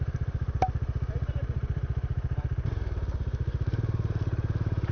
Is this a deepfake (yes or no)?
yes